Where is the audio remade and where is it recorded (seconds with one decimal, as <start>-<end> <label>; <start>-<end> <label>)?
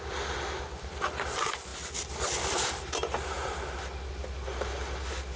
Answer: 0.0-5.4 recorded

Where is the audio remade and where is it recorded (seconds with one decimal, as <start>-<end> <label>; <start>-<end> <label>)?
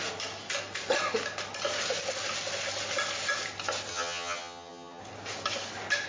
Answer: 0.0-3.9 recorded; 3.9-5.0 remade; 5.0-6.1 recorded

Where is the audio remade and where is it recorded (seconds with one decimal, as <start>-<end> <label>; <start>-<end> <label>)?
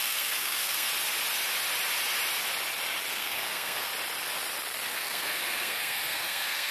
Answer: 0.0-0.9 remade; 0.9-3.1 recorded; 3.1-3.9 remade; 3.9-4.9 recorded; 4.9-6.7 remade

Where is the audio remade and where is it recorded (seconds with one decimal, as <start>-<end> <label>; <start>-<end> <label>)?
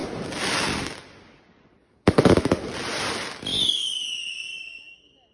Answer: 0.0-1.8 recorded; 1.8-2.5 remade; 2.5-3.5 recorded; 3.5-4.2 remade; 4.2-5.3 recorded